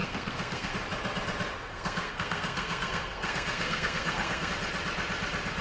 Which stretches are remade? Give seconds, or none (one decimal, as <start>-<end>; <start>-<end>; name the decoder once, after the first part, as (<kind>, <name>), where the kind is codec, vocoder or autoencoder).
0.0-0.7 (codec, SNAC); 1.7-4.5